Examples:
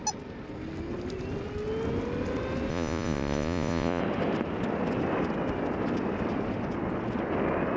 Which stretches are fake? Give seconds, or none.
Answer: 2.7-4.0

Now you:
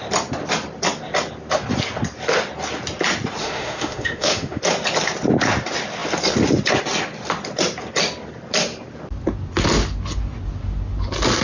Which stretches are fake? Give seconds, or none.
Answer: 3.4-4.6

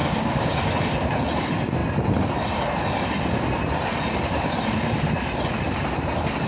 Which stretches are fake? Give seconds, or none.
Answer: 0.0-0.7

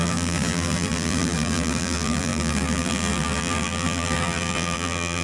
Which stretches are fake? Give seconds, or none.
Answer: 0.0-5.2